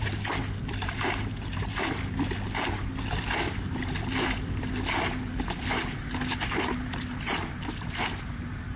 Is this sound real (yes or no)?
yes